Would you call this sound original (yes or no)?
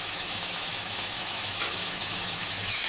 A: no